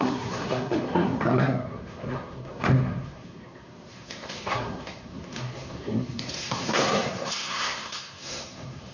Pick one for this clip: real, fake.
fake